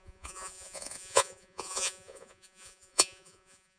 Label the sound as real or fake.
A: fake